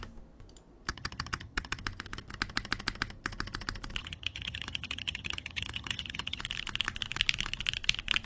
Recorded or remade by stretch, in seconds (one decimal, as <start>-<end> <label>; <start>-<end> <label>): 0.0-0.9 recorded; 0.9-1.8 remade; 1.8-4.0 recorded; 4.0-6.4 remade; 6.4-8.3 recorded